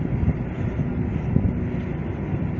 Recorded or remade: recorded